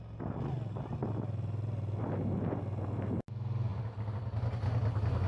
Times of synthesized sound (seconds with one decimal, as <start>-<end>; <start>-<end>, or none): none